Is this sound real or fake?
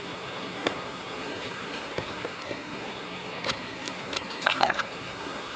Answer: fake